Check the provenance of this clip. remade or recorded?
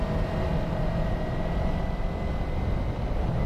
recorded